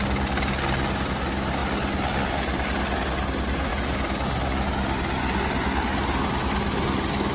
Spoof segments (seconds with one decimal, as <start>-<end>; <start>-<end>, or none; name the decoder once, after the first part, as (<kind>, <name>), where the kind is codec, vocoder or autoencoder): none